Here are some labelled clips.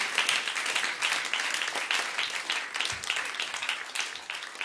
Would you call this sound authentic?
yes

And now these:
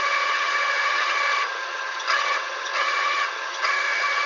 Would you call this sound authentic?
no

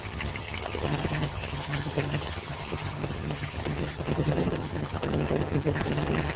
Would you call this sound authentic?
no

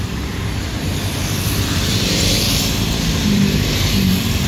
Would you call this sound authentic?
no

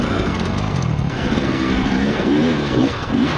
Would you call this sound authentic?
no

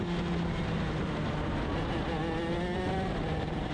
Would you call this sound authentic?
yes